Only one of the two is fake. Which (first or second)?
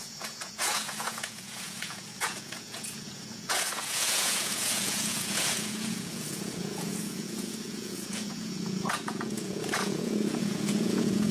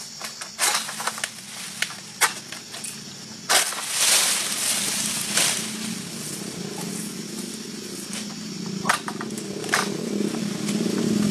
first